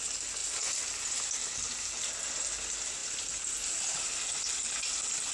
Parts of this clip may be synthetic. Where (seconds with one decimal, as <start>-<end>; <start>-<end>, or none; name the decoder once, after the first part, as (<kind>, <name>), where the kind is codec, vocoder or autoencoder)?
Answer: none

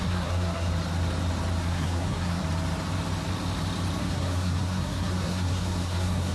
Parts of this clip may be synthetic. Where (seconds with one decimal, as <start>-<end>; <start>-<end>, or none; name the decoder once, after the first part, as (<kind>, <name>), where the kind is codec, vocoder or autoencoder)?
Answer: 0.0-0.7 (codec, SNAC); 1.6-2.4; 4.0-6.3

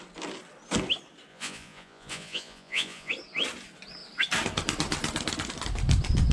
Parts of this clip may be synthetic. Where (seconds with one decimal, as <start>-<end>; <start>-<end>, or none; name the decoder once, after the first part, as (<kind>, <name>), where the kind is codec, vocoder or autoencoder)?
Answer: 1.3-3.1 (vocoder, Vocos)

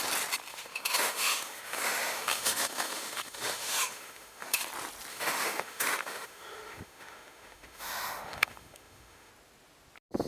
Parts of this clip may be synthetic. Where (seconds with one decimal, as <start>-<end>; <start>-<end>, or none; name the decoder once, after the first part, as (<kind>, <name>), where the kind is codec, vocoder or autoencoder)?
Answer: 0.5-4.6 (autoencoder, DAC-VAE); 5.1-9.3

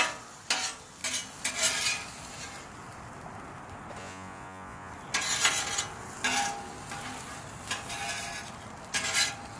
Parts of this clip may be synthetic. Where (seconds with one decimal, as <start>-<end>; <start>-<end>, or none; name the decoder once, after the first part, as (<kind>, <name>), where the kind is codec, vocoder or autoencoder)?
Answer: 4.0-4.9 (vocoder, Vocos)